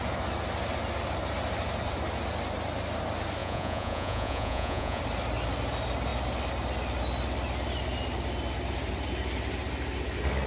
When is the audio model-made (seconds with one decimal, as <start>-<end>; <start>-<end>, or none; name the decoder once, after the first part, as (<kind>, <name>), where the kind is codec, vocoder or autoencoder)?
3.4-5.0 (vocoder, Vocos)